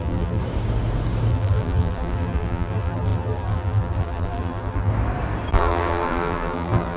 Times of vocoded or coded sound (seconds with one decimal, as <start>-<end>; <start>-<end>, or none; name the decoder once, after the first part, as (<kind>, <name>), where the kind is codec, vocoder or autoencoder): 0.0-0.4 (vocoder, BigVGAN v2); 1.3-4.9; 5.5-7.0